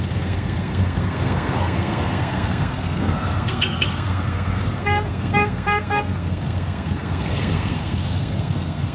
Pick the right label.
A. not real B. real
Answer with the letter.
A